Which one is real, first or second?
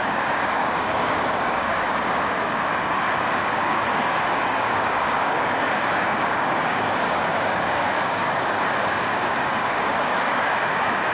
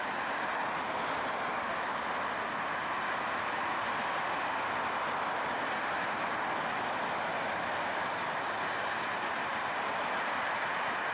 second